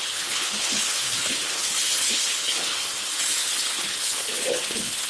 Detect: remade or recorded remade